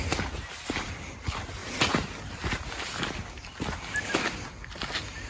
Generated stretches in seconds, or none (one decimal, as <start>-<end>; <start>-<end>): none

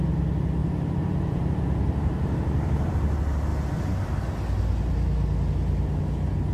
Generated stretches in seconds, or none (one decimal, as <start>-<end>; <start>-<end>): 0.6-2.9

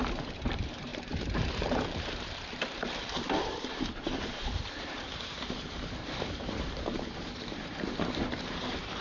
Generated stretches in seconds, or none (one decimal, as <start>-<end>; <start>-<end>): 0.0-9.0

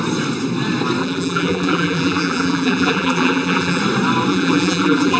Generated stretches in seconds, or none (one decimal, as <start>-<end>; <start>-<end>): 1.0-3.8; 4.3-5.2

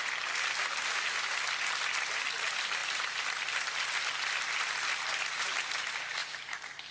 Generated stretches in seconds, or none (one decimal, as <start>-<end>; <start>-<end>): 6.2-6.9

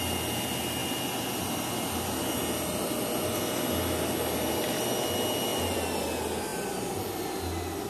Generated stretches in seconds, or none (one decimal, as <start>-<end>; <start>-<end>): 0.8-2.4; 5.5-6.0; 6.5-7.0

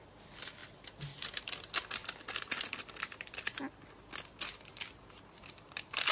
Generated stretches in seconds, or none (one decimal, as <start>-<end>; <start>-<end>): 2.0-3.6